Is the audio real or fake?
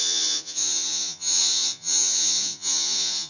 fake